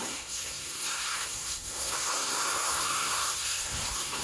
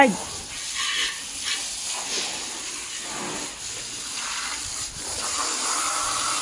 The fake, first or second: first